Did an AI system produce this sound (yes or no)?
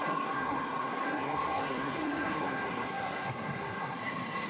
yes